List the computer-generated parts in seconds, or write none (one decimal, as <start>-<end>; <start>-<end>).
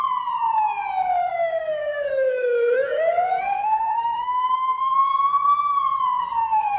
1.2-5.3; 5.9-6.8